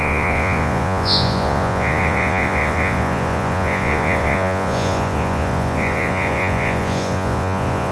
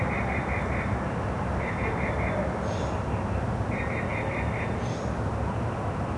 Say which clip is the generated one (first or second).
first